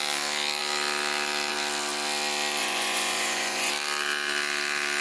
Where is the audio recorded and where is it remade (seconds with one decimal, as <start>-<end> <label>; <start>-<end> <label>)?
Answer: 0.0-2.6 recorded; 2.6-3.7 remade; 3.7-5.0 recorded